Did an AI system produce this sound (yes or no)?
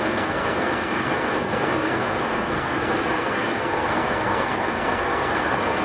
yes